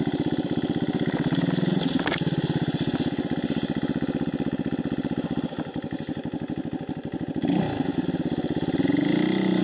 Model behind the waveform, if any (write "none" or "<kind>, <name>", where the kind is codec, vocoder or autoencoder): none